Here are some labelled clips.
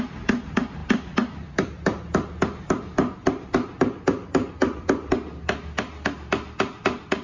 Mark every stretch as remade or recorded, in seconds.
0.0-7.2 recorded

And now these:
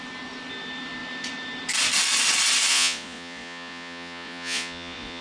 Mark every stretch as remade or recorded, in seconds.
0.0-2.7 recorded; 2.7-5.2 remade

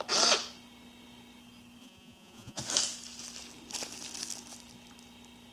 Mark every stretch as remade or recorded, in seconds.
0.0-1.8 recorded; 1.8-2.6 remade; 2.6-5.5 recorded